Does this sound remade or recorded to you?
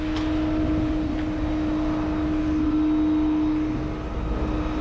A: recorded